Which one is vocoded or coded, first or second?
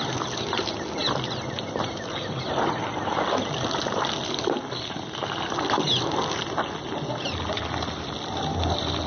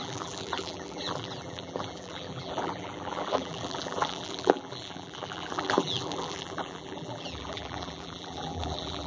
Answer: second